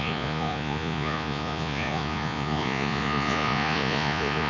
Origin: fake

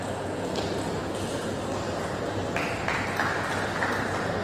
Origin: real